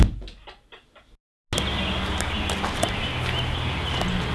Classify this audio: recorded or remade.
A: recorded